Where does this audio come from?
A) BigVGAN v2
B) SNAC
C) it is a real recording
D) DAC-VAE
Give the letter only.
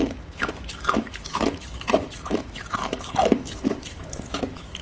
D